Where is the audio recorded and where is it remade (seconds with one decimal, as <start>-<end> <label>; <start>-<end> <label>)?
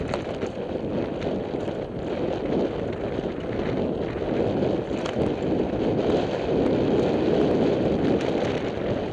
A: 0.0-9.1 recorded